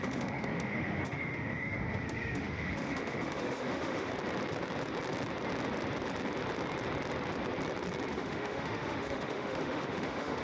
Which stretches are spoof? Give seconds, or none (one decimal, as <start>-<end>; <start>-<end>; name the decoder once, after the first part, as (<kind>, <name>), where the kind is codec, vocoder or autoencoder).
0.0-4.1 (autoencoder, DAC-VAE); 8.1-10.4